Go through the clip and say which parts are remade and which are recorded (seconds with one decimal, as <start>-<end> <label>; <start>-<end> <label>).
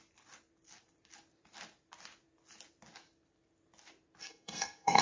0.0-4.2 recorded; 4.2-5.0 remade